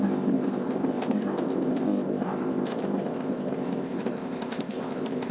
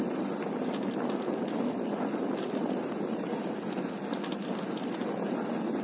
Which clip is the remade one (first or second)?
first